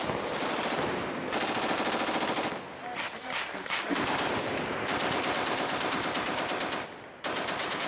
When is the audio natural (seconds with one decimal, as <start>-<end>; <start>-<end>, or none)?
0.0-2.8; 4.5-7.9